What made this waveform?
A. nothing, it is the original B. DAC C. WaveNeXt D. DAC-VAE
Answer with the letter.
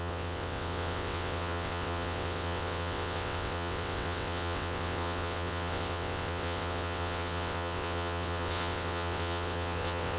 C